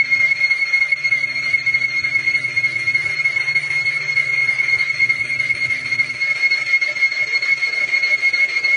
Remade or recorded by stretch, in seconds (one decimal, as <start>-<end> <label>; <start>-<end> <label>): 0.0-4.2 recorded; 4.2-5.9 remade; 5.9-8.8 recorded

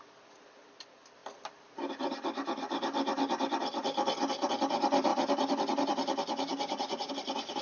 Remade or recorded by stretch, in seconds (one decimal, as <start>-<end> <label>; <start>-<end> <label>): 0.0-7.6 recorded

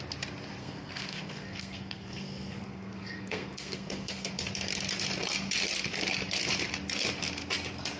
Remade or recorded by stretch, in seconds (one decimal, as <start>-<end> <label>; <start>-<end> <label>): 0.0-0.6 recorded; 0.6-4.3 remade; 4.3-8.0 recorded

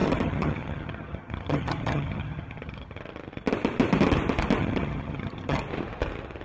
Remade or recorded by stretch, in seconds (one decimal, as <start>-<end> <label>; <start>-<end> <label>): 0.0-3.0 remade; 3.0-4.6 recorded; 4.6-5.6 remade; 5.6-6.4 recorded

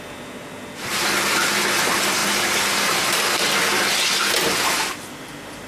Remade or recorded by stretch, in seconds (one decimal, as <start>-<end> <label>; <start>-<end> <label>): 0.0-5.7 recorded